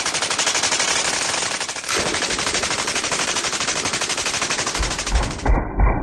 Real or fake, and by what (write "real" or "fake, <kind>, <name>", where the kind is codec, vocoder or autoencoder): fake, vocoder, BigVGAN v2